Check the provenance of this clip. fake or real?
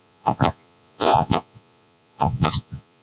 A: fake